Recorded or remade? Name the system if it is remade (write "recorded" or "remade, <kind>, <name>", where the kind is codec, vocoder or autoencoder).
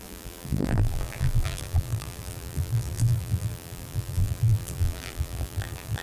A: remade, vocoder, BigVGAN v2